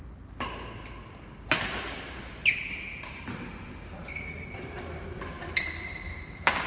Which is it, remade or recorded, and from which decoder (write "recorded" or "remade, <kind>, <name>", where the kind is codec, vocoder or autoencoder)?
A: recorded